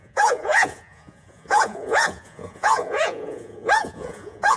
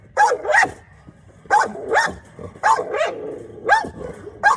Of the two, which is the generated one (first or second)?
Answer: first